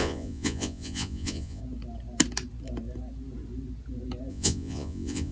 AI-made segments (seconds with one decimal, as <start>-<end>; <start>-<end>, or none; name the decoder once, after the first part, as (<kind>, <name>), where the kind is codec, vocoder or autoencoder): 0.0-1.6 (vocoder, Vocos); 4.3-5.3